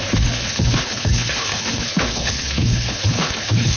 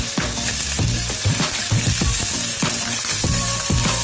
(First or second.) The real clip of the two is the second